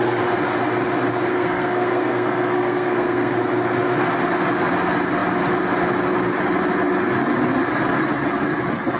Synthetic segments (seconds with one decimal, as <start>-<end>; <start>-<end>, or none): 1.3-3.3